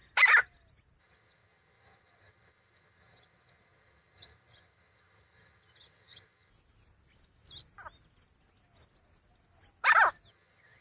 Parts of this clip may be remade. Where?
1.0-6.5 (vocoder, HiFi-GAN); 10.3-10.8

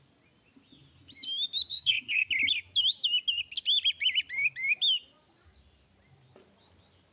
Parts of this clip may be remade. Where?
1.7-2.3 (codec, SNAC)

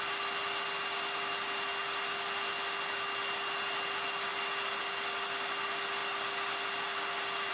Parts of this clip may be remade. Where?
none

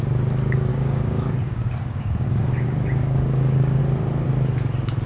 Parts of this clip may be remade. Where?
0.7-3.8 (codec, DAC)